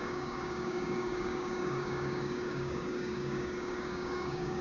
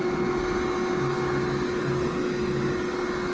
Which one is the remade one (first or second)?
first